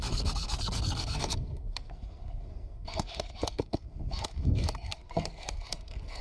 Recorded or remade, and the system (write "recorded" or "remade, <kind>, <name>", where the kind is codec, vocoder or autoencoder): remade, codec, SNAC